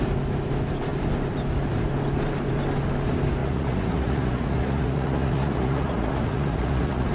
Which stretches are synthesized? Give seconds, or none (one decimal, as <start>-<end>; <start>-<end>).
3.4-7.1